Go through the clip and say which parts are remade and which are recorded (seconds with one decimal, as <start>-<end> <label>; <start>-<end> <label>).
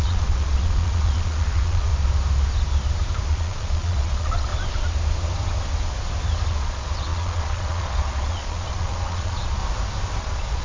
0.0-1.9 remade; 1.9-3.3 recorded; 3.3-4.5 remade; 4.5-6.5 recorded; 6.5-9.6 remade; 9.6-10.2 recorded; 10.2-10.6 remade